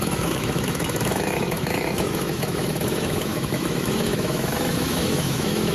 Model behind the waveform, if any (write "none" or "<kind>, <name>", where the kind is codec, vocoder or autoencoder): autoencoder, DAC-VAE